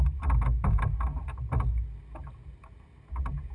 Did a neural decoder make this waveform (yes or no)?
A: no